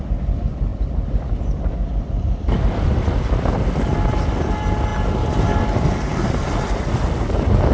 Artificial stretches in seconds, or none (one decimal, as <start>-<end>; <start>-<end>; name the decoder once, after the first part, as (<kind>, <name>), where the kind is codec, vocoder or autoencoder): none